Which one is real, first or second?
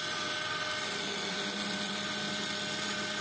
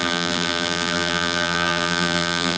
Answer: first